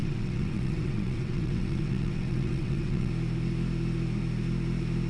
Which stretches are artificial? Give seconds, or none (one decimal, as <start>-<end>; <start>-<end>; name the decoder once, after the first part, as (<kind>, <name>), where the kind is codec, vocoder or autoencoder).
0.0-3.1 (vocoder, WaveNeXt)